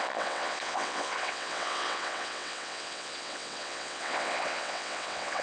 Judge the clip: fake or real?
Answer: fake